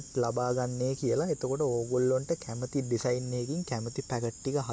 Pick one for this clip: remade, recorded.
recorded